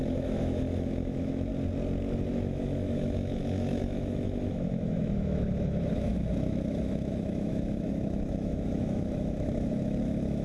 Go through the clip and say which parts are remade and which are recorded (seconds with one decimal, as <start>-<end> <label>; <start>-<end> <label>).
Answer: 0.0-1.5 remade; 1.5-2.3 recorded; 2.3-10.4 remade